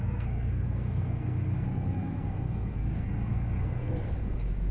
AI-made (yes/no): yes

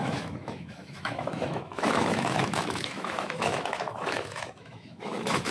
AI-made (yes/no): yes